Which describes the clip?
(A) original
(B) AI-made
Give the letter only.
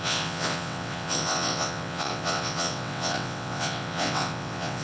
B